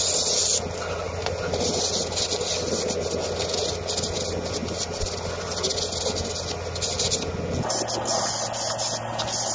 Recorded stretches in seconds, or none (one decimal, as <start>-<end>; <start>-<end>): 0.0-9.5